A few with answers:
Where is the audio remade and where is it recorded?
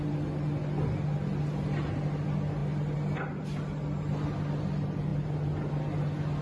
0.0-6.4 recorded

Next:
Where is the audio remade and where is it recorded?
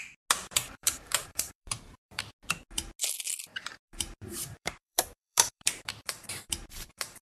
0.0-0.4 recorded; 0.4-2.3 remade; 2.3-3.5 recorded; 3.5-7.2 remade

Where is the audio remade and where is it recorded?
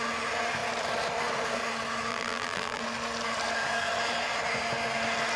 0.0-2.1 recorded; 2.1-2.8 remade; 2.8-5.4 recorded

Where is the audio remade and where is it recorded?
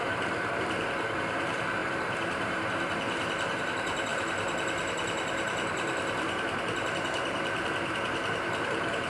0.0-9.1 remade